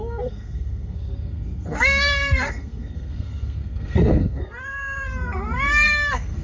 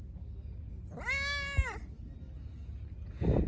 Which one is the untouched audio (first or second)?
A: second